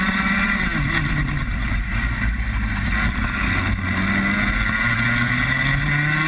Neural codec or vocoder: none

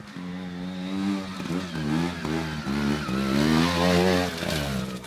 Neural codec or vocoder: none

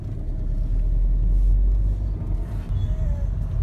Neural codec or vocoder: none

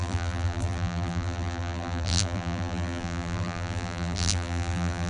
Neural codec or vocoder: vocoder, BigVGAN v2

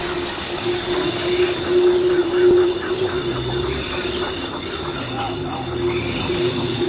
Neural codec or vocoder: none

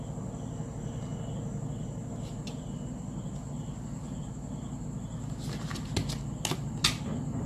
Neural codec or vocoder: none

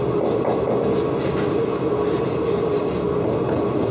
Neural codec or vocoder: none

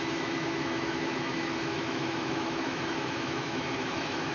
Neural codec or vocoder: autoencoder, DAC-VAE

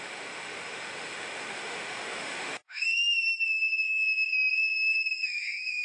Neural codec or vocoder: autoencoder, DAC-VAE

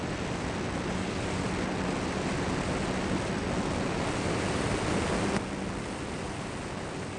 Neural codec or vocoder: none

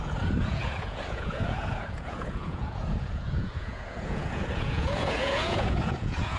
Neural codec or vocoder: vocoder, Vocos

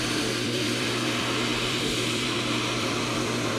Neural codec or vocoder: vocoder, BigVGAN v2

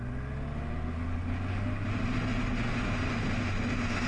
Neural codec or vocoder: none